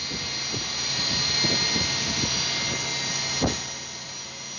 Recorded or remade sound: recorded